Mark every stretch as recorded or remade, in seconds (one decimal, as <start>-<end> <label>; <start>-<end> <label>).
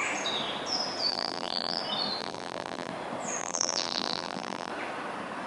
0.0-1.1 recorded; 1.1-1.8 remade; 1.8-2.2 recorded; 2.2-2.9 remade; 2.9-3.4 recorded; 3.4-4.7 remade; 4.7-5.5 recorded